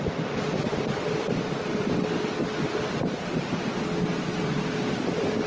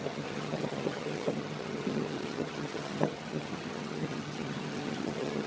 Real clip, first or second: first